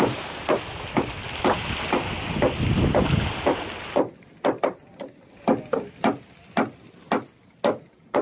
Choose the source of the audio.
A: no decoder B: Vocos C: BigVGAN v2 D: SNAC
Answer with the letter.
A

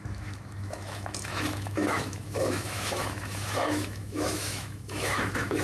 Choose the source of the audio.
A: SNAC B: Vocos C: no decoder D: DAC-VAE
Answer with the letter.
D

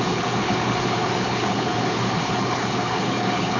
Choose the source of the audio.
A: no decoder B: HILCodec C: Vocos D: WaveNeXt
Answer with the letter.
B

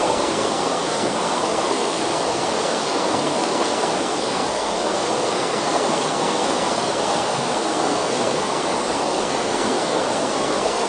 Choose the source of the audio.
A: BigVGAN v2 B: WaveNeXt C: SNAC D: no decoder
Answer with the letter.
C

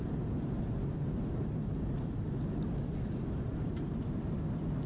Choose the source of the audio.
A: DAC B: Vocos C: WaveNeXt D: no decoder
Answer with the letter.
D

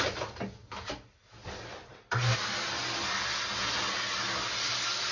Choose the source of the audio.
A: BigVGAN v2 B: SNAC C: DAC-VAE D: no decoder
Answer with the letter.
D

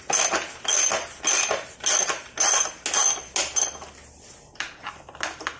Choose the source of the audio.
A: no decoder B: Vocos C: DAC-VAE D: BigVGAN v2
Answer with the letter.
A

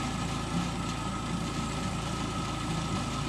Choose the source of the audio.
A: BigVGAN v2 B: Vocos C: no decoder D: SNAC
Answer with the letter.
C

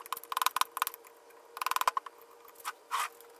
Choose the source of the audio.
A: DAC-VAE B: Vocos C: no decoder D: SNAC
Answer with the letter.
C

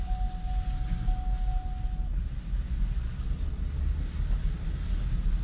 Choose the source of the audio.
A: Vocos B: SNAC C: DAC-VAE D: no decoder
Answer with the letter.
D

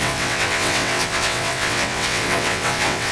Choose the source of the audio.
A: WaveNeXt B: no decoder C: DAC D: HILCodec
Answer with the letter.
A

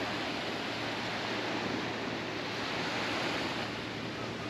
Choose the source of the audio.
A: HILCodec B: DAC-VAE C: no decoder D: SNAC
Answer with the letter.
C